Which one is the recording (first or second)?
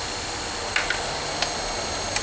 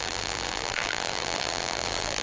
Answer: first